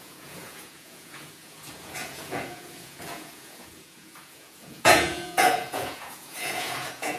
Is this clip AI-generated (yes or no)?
yes